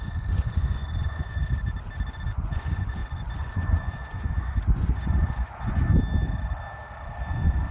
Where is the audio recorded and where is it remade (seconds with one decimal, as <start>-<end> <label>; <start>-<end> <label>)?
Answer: 0.0-1.4 remade; 1.4-2.4 recorded; 2.4-5.9 remade; 5.9-7.3 recorded; 7.3-7.7 remade